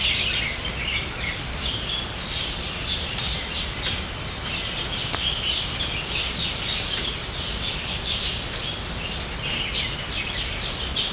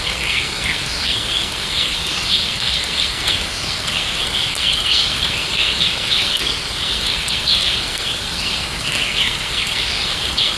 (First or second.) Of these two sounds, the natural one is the first